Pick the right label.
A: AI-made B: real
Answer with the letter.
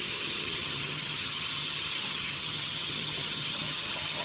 A